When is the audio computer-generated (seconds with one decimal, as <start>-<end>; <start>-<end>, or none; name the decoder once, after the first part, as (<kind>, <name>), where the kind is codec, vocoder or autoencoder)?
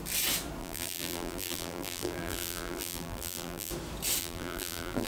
0.6-3.7 (vocoder, BigVGAN v2); 4.2-5.1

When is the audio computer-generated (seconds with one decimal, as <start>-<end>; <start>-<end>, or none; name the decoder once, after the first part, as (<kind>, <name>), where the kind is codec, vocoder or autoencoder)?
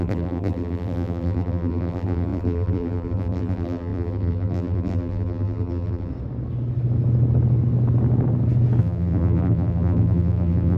0.0-6.1 (vocoder, BigVGAN v2); 8.8-10.8